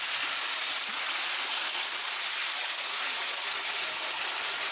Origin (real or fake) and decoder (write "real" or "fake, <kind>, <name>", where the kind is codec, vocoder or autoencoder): real